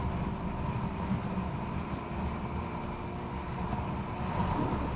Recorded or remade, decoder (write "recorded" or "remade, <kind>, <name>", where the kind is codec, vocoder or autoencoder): recorded